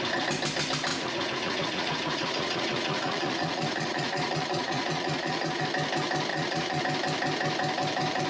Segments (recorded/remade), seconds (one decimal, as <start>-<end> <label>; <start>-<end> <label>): 0.0-0.9 recorded; 0.9-5.6 remade; 5.6-6.3 recorded; 6.3-6.8 remade; 6.8-8.3 recorded